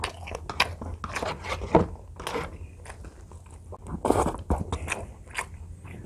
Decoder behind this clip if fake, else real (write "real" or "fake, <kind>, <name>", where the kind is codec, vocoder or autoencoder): real